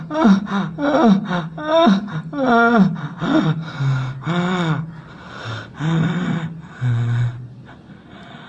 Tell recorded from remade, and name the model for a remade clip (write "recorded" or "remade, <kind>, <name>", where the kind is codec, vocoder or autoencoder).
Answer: recorded